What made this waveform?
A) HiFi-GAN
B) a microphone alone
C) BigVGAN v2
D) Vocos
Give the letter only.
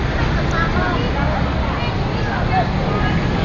B